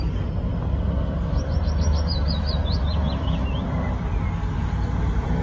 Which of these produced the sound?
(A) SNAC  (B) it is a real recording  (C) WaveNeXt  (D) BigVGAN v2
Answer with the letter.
D